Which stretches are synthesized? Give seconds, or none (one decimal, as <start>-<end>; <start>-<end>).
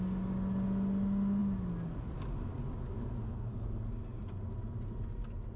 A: 3.2-3.8